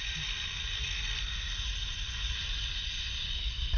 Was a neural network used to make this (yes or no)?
no